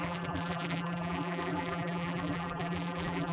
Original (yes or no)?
no